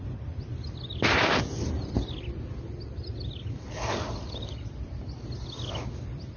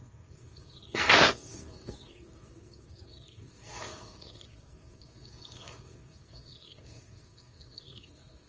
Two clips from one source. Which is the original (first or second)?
first